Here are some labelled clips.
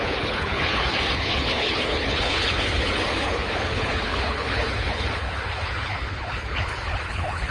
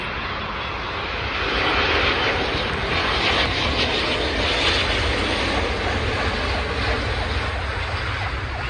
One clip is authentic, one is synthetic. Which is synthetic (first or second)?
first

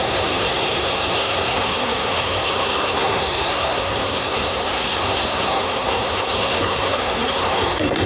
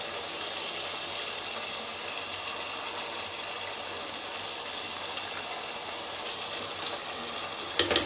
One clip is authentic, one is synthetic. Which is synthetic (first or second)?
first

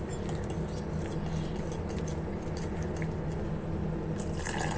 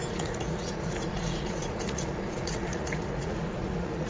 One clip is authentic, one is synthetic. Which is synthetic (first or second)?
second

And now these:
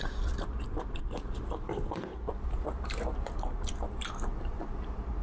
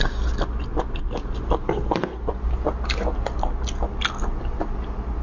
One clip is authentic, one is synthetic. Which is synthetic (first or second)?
first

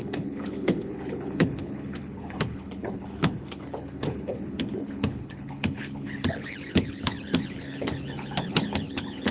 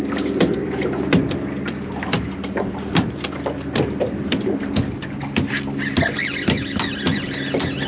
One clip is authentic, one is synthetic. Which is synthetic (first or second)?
first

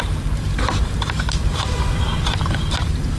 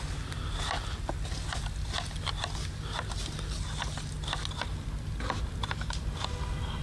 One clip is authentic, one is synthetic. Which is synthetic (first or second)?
first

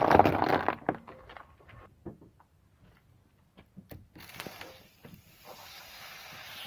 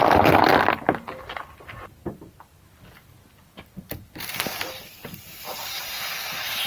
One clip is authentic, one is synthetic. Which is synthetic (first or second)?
second